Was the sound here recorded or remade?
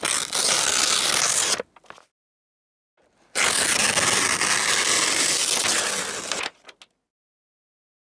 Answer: recorded